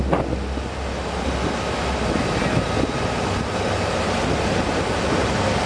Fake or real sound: real